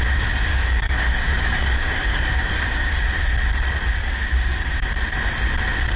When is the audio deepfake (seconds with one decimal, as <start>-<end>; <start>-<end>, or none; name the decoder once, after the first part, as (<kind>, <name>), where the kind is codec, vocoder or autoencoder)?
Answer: 0.5-2.9 (codec, DAC); 4.0-4.7